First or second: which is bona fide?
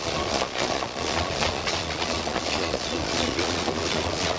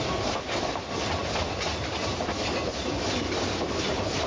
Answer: second